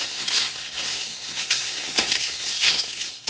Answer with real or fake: fake